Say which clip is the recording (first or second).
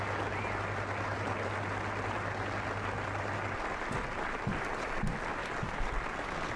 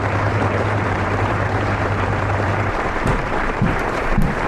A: first